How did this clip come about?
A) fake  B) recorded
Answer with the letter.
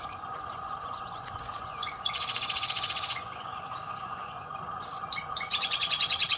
A